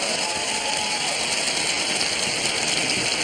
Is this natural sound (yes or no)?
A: yes